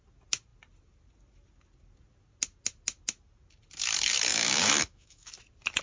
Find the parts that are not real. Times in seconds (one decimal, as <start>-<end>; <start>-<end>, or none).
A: 4.3-5.3